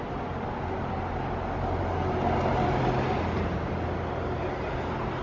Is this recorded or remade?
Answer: recorded